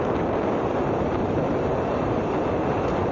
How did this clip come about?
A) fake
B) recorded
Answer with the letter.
B